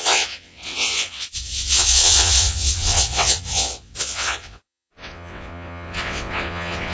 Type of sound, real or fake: fake